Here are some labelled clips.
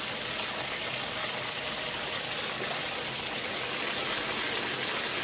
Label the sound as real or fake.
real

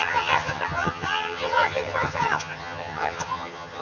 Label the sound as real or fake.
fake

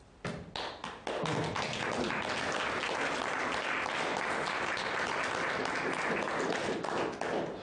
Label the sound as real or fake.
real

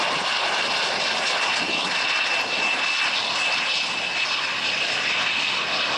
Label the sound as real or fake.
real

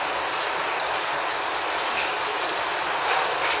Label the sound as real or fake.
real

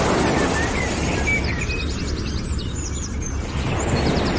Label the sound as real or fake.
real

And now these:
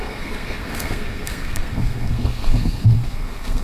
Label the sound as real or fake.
fake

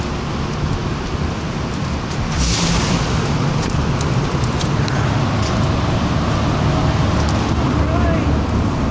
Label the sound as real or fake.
real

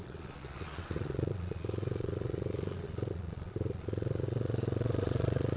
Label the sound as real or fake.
fake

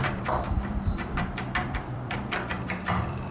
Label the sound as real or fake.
fake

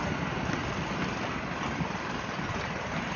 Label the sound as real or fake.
real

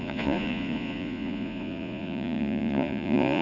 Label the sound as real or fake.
fake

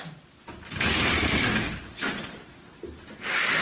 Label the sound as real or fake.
real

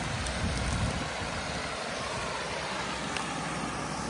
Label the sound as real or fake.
real